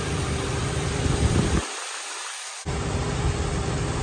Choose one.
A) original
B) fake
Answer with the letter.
A